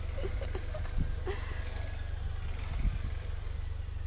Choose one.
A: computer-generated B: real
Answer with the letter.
B